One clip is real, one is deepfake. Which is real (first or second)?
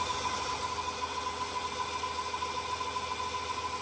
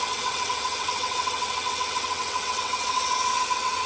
first